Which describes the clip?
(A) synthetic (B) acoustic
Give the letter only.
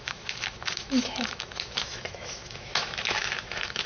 A